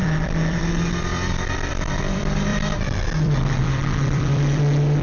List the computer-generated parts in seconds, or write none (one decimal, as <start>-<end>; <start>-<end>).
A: 0.0-5.0